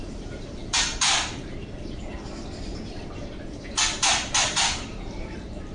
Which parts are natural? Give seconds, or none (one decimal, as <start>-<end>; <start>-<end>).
none

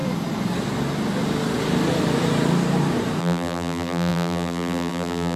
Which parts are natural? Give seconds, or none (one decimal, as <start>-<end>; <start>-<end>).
0.0-3.2

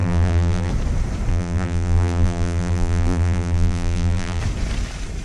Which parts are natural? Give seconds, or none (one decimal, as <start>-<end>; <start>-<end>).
0.7-1.3; 4.4-5.2

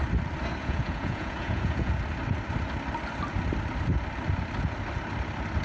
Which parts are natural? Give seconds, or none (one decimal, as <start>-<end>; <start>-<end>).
0.0-0.6; 1.9-5.6

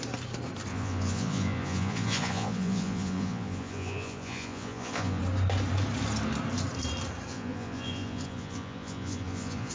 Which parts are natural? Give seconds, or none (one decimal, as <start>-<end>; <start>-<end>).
0.0-0.7; 5.2-7.3

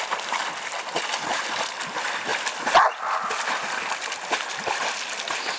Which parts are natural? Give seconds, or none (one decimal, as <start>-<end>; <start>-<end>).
0.0-5.6

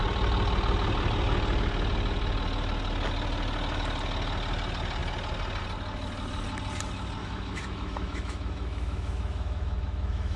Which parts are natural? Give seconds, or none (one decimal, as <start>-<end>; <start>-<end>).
0.0-7.2